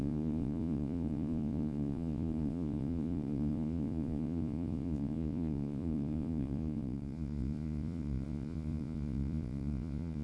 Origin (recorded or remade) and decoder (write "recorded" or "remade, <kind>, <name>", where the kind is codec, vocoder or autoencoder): remade, vocoder, Vocos